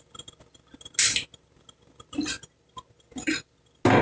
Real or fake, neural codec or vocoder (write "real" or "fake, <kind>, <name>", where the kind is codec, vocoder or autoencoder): real